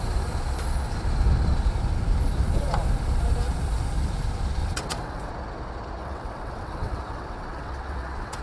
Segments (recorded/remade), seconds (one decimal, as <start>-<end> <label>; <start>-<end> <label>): 0.0-4.6 recorded; 4.6-5.3 remade; 5.3-6.0 recorded; 6.0-8.4 remade